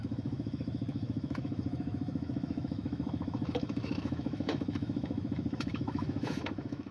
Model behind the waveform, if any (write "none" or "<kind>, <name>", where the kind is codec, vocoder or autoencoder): autoencoder, DAC-VAE